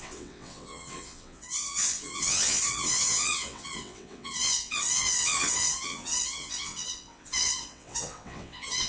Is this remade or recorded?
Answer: remade